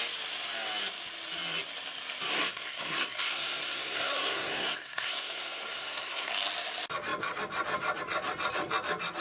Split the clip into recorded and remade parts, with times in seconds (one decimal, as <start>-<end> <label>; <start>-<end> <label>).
0.0-2.3 recorded; 2.3-6.3 remade; 6.3-9.2 recorded